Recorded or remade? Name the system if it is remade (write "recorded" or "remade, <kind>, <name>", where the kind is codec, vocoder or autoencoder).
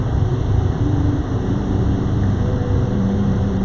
remade, vocoder, BigVGAN v2